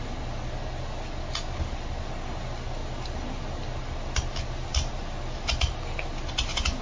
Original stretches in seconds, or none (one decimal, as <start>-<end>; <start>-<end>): 0.0-6.8